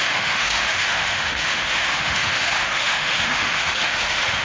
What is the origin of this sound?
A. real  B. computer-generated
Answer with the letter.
B